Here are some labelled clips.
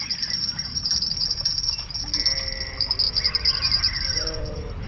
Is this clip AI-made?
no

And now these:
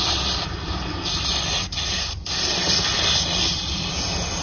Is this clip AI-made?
no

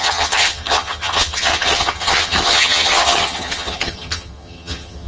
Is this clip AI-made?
yes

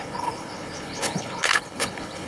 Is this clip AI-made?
yes